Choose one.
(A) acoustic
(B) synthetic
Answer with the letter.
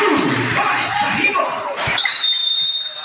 B